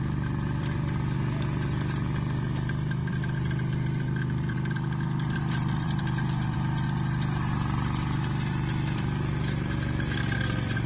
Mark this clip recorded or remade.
remade